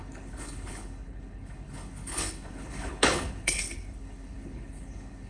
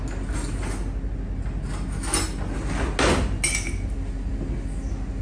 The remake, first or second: first